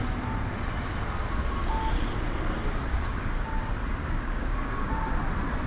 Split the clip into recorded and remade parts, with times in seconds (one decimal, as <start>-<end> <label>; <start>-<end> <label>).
0.0-2.9 recorded; 2.9-3.6 remade; 3.6-4.0 recorded; 4.0-4.9 remade; 4.9-5.7 recorded